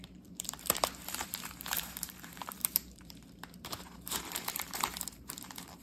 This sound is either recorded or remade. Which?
remade